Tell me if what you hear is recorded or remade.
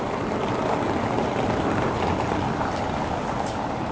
recorded